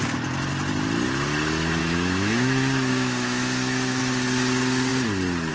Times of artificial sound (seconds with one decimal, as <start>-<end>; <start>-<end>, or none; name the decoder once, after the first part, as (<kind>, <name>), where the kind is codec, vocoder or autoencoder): 1.8-4.0 (autoencoder, DAC-VAE)